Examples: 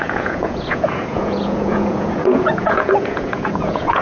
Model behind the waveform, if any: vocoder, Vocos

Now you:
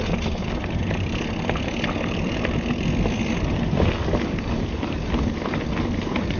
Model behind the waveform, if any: none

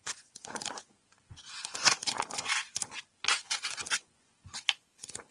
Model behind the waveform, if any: vocoder, Vocos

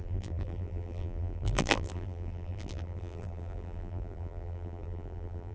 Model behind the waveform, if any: vocoder, BigVGAN v2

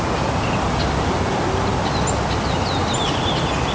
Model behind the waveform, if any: none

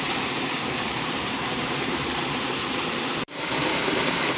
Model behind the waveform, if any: vocoder, BigVGAN v2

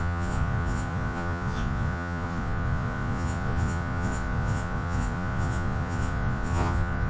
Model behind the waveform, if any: vocoder, Vocos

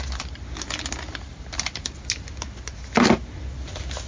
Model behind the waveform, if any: none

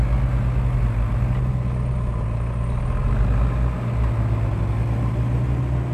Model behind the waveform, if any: none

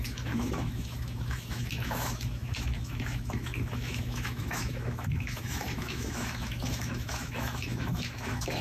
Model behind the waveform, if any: autoencoder, DAC-VAE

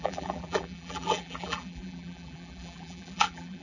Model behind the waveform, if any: vocoder, BigVGAN v2